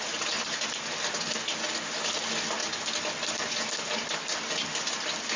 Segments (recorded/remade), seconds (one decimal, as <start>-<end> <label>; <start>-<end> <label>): 0.0-5.4 recorded